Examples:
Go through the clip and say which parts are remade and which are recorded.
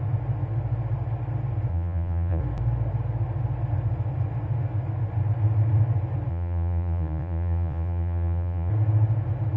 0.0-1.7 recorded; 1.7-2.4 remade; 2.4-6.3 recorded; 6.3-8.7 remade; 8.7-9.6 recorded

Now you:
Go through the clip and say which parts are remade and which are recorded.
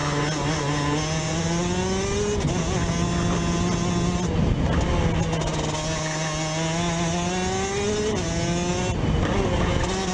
0.0-10.1 recorded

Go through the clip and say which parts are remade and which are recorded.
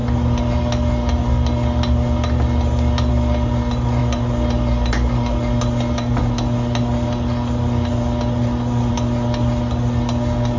0.0-10.6 recorded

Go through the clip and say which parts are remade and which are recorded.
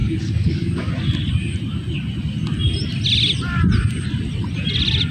0.0-0.9 remade; 0.9-5.1 recorded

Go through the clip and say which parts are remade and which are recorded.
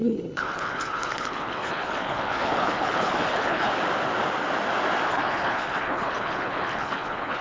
0.0-3.7 remade; 3.7-5.1 recorded; 5.1-7.4 remade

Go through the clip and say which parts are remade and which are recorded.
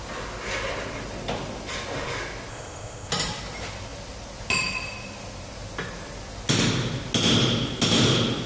0.0-2.5 recorded; 2.5-3.1 remade; 3.1-8.5 recorded